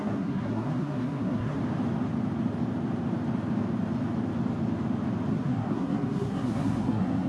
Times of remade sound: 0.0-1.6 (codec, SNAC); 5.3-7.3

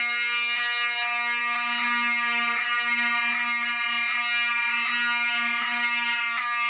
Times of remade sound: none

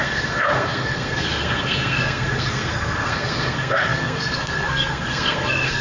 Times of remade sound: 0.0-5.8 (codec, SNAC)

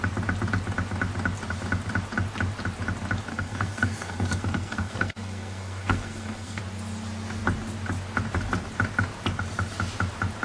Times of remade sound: 3.3-6.6 (codec, SNAC)

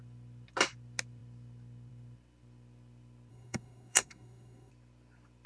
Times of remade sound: 3.3-4.7 (codec, SNAC)

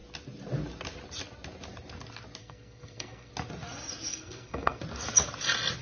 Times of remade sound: 2.4-3.3 (codec, SNAC); 4.1-4.8